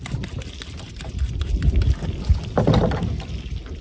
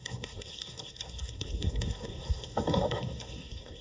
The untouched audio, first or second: first